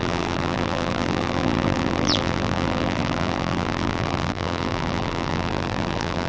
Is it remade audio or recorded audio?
remade